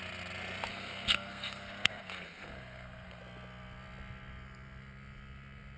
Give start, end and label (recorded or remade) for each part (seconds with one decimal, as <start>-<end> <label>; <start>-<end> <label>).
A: 0.0-0.7 recorded; 0.7-3.2 remade; 3.2-5.8 recorded